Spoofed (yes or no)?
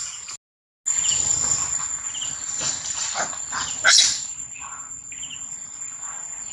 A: no